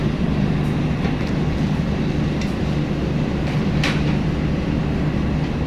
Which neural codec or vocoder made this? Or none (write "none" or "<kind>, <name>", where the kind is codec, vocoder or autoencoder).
none